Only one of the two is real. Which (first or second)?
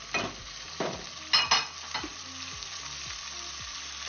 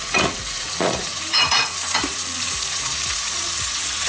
first